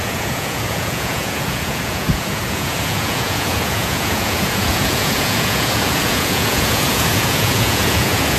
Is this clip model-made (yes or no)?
yes